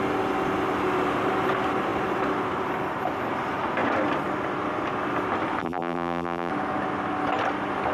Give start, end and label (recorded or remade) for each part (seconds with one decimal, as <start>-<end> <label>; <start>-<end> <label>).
0.0-5.6 recorded; 5.6-6.5 remade; 6.5-7.9 recorded